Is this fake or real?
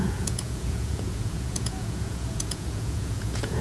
fake